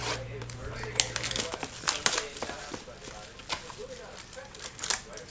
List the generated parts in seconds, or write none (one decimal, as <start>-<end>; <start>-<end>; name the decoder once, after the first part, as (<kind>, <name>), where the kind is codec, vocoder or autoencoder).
none